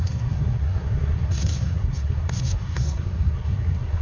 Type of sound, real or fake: fake